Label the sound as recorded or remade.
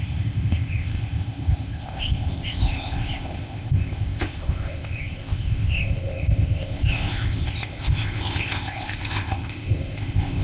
remade